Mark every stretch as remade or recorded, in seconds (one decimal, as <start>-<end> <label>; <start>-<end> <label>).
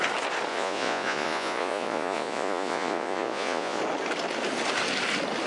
0.0-0.5 recorded; 0.5-3.8 remade; 3.8-5.5 recorded